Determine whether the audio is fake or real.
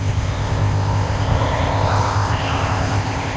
fake